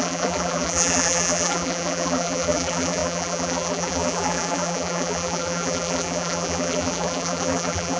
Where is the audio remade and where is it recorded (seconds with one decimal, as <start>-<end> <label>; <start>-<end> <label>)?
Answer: 0.0-8.0 remade